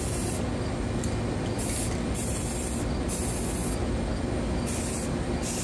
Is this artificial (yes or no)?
no